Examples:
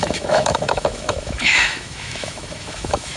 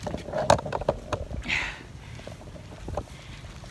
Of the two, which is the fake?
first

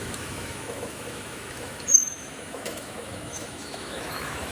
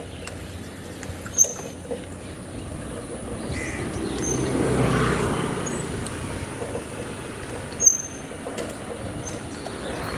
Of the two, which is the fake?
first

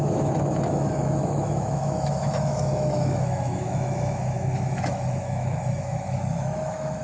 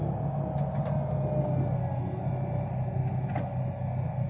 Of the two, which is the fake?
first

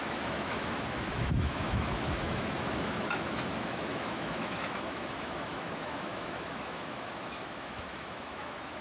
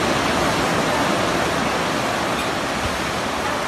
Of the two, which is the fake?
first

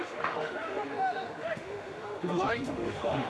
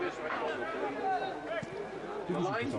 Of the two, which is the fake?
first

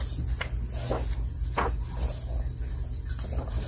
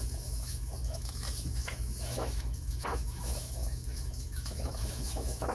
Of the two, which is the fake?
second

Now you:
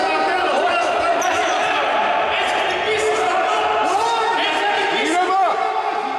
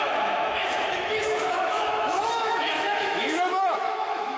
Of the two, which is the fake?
second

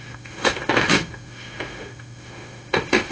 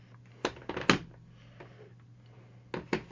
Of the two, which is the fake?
first